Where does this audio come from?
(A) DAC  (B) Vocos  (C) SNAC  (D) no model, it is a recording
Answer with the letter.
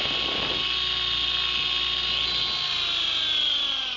D